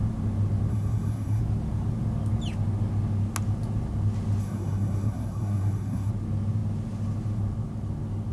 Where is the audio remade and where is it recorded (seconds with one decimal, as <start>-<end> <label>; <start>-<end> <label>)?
0.0-0.7 recorded; 0.7-1.4 remade; 1.4-4.4 recorded; 4.4-6.1 remade; 6.1-8.3 recorded